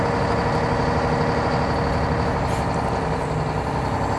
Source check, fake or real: real